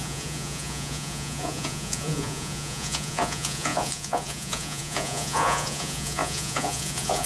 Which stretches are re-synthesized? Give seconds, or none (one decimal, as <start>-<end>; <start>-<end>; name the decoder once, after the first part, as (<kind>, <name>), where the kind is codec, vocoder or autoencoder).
0.0-7.3 (vocoder, Vocos)